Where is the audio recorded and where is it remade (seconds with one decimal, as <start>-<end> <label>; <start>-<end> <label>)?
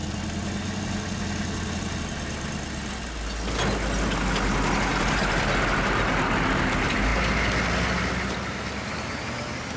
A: 0.0-9.8 recorded